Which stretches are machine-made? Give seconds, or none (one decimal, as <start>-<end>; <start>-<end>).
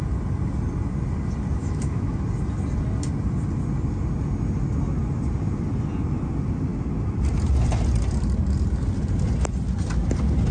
1.6-2.2